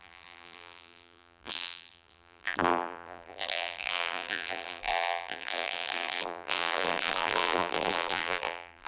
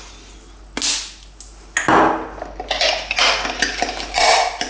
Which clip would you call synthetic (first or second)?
first